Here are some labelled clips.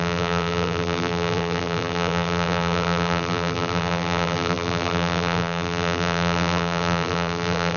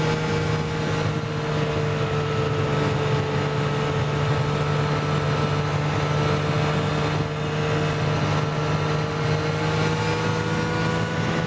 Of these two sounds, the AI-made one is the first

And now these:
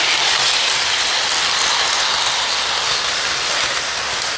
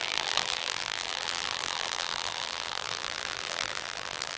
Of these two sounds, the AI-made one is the second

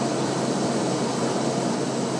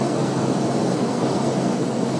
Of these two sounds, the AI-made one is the second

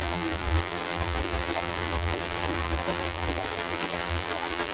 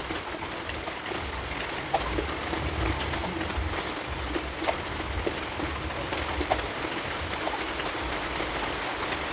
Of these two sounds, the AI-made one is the first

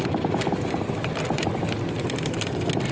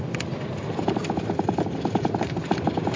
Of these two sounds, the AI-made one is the second